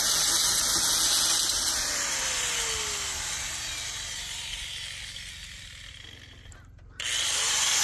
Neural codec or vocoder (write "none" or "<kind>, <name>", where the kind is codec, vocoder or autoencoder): none